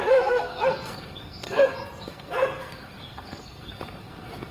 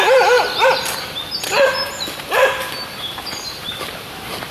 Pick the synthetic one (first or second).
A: first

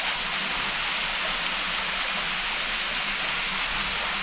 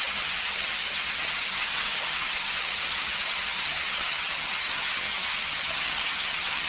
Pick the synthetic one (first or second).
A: second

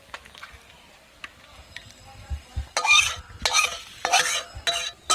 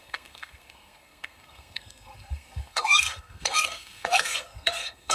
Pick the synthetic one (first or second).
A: second